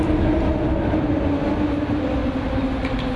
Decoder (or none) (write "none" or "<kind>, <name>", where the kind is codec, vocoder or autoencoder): none